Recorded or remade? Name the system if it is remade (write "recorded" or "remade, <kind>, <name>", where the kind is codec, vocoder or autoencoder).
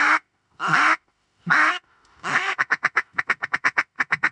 remade, autoencoder, DAC-VAE